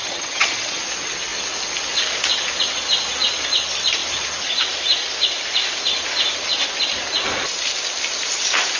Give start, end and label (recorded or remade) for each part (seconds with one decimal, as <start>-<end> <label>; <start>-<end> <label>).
0.0-0.8 remade; 0.8-8.8 recorded